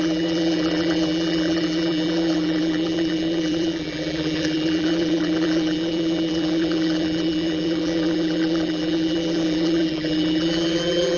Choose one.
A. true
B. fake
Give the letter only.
B